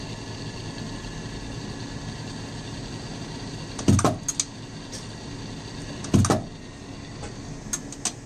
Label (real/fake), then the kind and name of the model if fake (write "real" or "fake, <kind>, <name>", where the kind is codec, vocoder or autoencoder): real